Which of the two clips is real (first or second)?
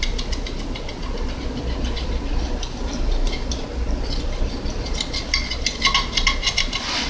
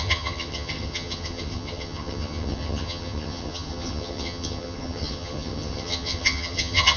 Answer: first